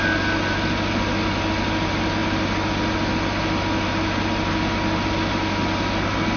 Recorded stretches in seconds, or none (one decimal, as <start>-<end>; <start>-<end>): 0.0-6.4